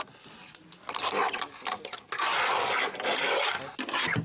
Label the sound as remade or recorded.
recorded